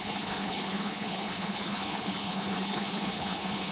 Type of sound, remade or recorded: remade